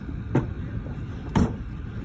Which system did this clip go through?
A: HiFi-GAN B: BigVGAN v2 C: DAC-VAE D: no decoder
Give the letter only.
D